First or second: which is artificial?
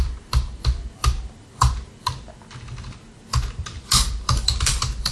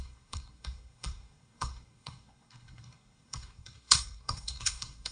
second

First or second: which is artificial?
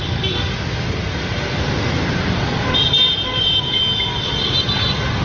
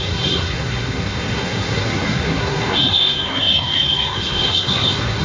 second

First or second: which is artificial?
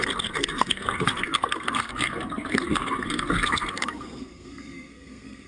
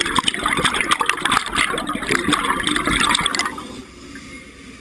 first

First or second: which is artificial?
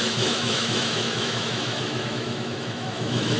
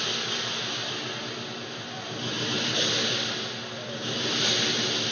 first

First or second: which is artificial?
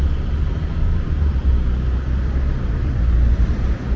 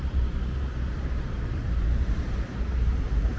second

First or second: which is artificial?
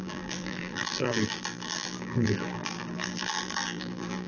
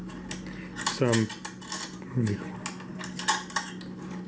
first